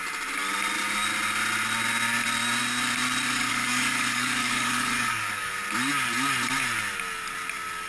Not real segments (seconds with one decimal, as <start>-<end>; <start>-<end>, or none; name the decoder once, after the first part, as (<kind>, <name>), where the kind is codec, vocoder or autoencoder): 3.5-5.5 (codec, DAC)